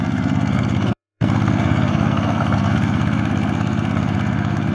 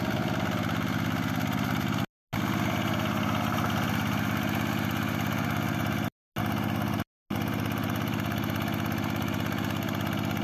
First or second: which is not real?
first